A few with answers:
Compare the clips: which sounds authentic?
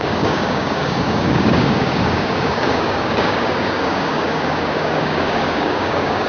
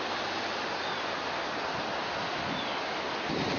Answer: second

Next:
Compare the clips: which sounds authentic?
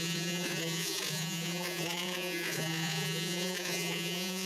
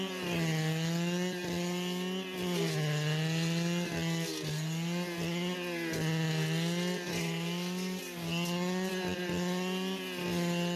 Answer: second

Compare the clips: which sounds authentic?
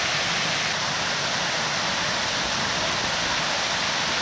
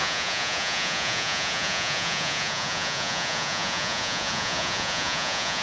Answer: first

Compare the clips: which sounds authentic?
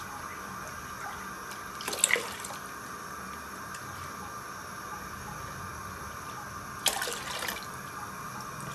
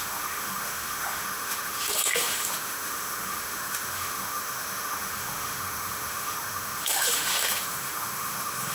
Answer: first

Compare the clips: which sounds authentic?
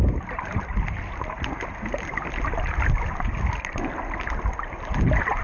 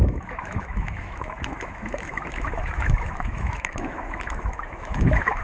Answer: first